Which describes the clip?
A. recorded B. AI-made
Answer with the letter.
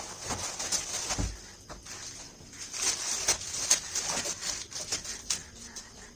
A